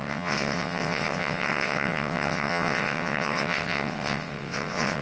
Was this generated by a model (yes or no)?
yes